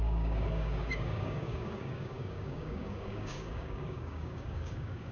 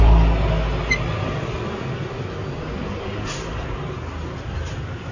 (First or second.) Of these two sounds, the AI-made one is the first